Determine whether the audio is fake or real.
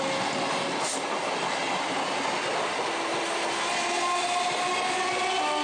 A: real